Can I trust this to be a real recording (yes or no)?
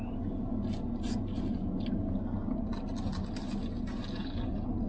yes